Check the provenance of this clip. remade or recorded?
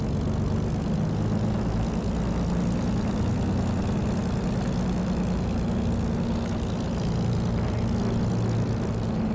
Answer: recorded